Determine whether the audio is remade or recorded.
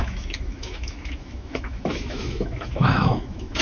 remade